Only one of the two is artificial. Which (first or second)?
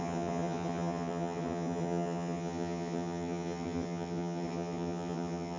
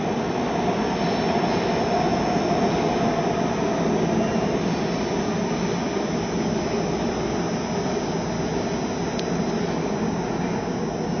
first